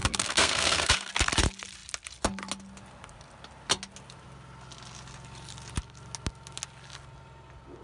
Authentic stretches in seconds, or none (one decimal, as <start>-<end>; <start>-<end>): 1.1-7.8